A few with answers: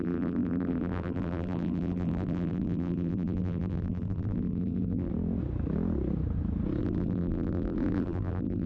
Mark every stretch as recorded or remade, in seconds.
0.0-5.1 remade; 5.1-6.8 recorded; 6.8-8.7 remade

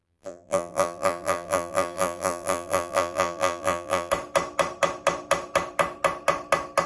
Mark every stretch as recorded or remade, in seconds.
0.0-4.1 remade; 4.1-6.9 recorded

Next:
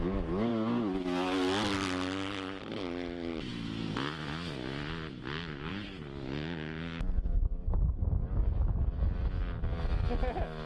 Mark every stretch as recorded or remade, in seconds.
0.0-10.7 recorded

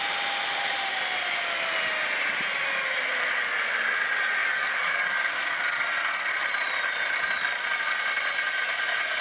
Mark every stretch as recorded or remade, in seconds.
0.0-4.4 recorded; 4.4-5.6 remade; 5.6-9.2 recorded

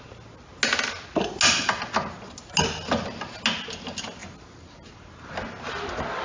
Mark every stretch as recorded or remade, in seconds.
0.0-6.2 recorded

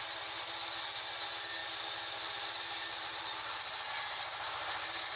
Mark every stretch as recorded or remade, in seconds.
0.0-5.2 recorded

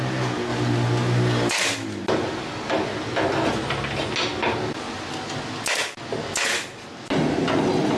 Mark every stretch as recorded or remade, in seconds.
0.0-8.0 recorded

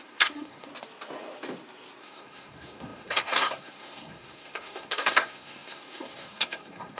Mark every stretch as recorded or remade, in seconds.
0.0-0.7 remade; 0.7-2.0 recorded; 2.0-7.0 remade